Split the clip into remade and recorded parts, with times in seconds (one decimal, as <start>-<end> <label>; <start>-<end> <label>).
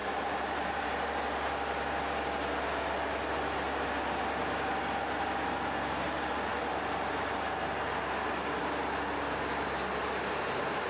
0.0-1.1 remade; 1.1-10.9 recorded